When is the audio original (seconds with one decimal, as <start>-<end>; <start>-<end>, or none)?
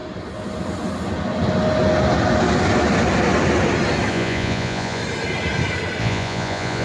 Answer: 0.0-4.1; 5.0-6.0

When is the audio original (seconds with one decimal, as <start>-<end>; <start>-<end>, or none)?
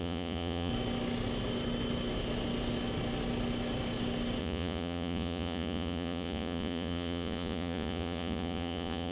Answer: 0.7-4.4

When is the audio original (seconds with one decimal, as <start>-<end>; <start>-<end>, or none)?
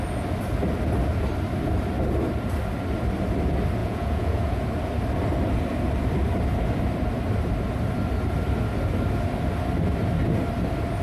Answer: 0.0-3.8; 4.6-11.0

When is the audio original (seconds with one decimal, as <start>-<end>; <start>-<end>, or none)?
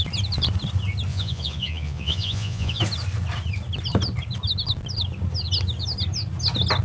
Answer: 0.0-1.1; 2.8-6.8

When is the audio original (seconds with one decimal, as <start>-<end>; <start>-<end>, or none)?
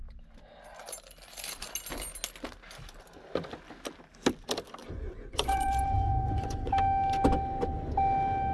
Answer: 0.0-4.8; 6.7-8.5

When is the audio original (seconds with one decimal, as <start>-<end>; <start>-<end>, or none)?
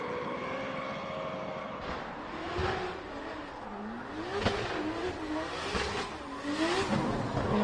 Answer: 0.0-7.6